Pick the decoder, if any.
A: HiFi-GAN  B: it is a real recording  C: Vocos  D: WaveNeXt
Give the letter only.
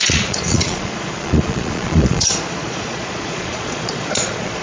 C